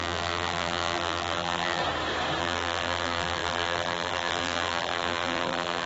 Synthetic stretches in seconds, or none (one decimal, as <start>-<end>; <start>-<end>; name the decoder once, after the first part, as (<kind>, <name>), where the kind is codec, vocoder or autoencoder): 0.0-1.8 (vocoder, BigVGAN v2); 2.4-5.9